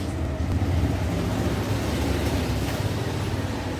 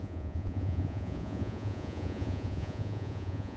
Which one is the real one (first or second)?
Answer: first